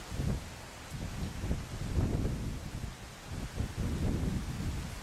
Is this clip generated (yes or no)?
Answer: no